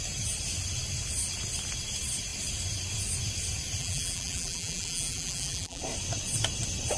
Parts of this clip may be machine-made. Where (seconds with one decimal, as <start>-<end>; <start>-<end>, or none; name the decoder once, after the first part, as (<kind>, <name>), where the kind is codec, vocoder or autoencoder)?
3.8-5.8 (vocoder, BigVGAN v2)